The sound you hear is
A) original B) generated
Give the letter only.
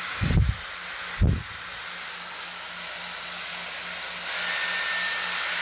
A